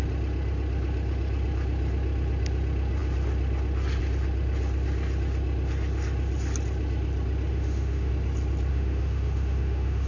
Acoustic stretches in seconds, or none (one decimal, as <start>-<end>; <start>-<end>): 0.0-7.5; 8.1-8.7